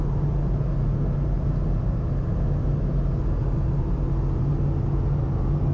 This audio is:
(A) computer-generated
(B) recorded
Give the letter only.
B